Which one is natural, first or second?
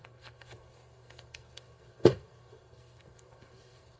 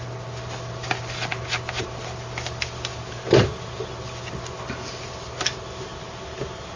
second